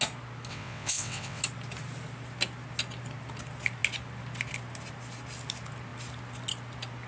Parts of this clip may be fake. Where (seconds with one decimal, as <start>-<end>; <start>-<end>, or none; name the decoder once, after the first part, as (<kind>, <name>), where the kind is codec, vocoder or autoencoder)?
0.5-1.4 (vocoder, WaveNeXt)